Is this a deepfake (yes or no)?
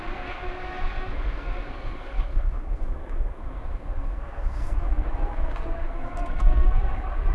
yes